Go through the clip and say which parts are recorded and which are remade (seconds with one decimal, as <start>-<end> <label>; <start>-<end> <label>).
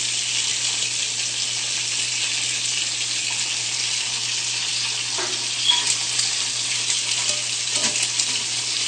0.0-8.9 recorded